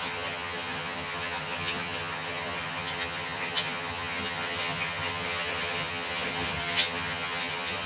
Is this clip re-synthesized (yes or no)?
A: yes